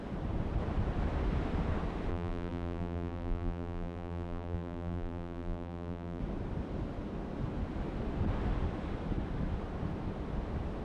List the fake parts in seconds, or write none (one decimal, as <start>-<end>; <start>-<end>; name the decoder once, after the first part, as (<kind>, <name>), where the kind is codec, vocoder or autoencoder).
2.1-6.2 (vocoder, BigVGAN v2)